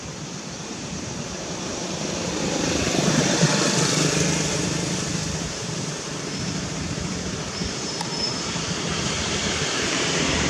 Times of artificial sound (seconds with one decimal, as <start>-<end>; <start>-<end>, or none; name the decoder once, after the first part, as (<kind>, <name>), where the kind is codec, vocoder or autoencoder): 0.0-3.5 (vocoder, BigVGAN v2); 4.5-10.5

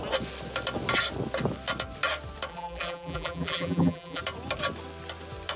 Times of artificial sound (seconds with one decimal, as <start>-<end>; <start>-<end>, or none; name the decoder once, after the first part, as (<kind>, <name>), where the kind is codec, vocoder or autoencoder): 2.5-4.2 (vocoder, BigVGAN v2)

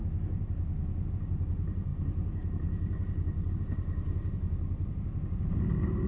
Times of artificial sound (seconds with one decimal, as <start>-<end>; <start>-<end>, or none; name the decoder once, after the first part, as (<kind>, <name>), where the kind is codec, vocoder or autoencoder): none

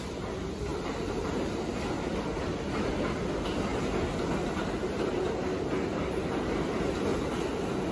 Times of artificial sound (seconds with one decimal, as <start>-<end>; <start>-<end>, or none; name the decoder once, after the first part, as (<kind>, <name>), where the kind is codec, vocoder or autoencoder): 0.7-1.8 (vocoder, BigVGAN v2)

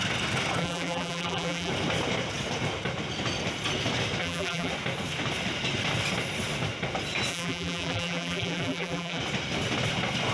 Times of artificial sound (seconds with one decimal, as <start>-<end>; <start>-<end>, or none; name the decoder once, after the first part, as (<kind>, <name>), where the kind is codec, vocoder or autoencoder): 0.6-1.7 (vocoder, BigVGAN v2); 4.2-4.7; 7.3-9.2

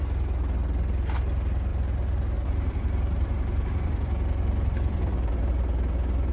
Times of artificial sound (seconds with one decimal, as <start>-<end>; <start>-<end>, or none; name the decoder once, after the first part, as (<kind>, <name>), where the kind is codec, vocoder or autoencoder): 1.7-5.5 (vocoder, BigVGAN v2)

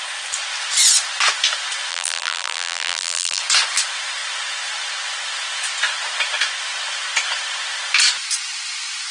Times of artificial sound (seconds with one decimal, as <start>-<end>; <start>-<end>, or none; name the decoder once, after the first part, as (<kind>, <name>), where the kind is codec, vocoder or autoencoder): 1.9-3.4 (vocoder, BigVGAN v2)